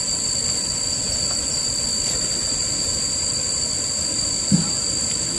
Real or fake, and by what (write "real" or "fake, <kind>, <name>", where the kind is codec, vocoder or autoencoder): real